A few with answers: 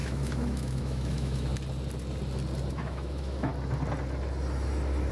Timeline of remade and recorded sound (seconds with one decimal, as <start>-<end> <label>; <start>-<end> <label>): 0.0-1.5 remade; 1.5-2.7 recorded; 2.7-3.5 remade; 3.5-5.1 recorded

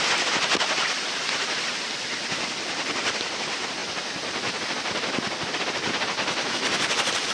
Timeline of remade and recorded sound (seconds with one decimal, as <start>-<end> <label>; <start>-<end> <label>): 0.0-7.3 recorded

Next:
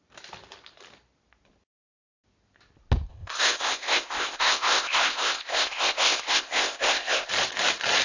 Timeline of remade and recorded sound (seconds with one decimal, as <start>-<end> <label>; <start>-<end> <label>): 0.0-3.1 recorded; 3.1-7.3 remade; 7.3-8.0 recorded

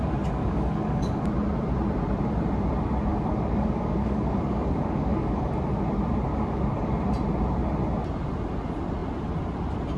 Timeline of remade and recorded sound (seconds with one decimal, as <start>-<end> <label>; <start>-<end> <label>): 0.0-0.4 recorded; 0.4-1.3 remade; 1.3-3.1 recorded; 3.1-5.5 remade; 5.5-6.3 recorded; 6.3-6.9 remade; 6.9-10.0 recorded

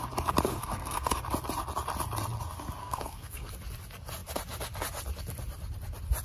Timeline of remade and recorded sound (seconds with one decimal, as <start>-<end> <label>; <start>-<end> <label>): 0.0-0.5 recorded; 0.5-1.2 remade; 1.2-2.8 recorded; 2.8-3.5 remade; 3.5-6.2 recorded